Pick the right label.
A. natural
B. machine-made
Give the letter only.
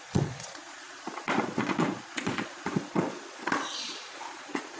B